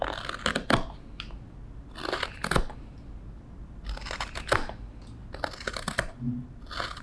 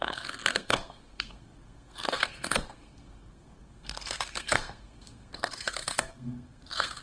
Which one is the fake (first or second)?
second